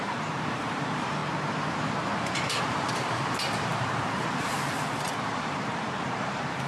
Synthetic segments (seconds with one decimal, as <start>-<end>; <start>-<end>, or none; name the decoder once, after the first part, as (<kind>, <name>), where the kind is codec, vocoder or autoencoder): 0.0-1.2 (vocoder, BigVGAN v2); 2.6-6.7